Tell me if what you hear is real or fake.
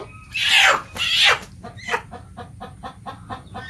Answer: real